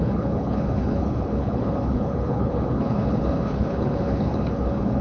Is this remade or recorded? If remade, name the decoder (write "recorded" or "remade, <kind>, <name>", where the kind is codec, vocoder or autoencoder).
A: remade, codec, HILCodec